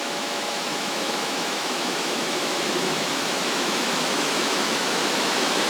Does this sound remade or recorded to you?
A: remade